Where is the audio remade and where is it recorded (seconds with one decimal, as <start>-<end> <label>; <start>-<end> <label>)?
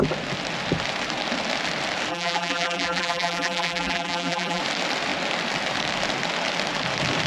0.0-2.1 recorded; 2.1-4.6 remade; 4.6-7.3 recorded